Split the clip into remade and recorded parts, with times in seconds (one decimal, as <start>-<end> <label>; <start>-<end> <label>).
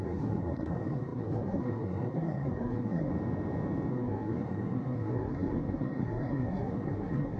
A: 0.0-3.1 remade; 3.1-3.9 recorded; 3.9-7.4 remade